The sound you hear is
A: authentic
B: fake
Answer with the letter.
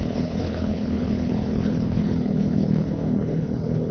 B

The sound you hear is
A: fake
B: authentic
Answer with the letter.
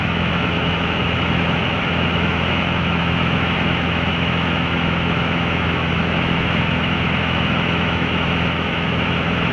A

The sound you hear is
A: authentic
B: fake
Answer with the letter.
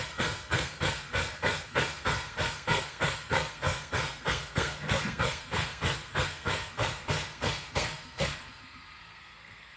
B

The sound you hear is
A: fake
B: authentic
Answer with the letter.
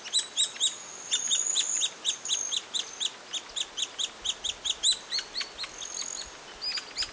B